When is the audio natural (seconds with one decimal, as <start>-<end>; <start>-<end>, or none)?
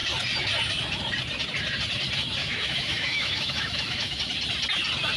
0.0-2.4; 4.2-5.2